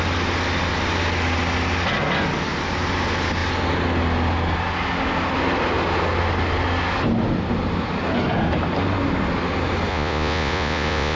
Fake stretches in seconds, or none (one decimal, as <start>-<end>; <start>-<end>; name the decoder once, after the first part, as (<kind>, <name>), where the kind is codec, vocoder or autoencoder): 9.9-11.2 (vocoder, Vocos)